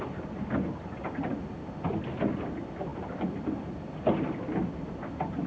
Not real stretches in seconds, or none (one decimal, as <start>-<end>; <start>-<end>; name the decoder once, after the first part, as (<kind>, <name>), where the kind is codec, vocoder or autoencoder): none